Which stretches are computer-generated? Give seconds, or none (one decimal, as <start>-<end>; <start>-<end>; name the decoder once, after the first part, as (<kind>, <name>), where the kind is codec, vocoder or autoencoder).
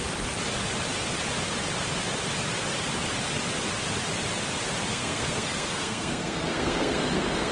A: 4.9-7.5 (codec, SNAC)